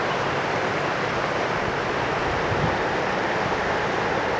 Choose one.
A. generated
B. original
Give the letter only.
B